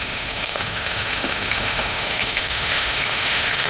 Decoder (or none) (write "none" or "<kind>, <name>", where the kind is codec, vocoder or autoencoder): autoencoder, DAC-VAE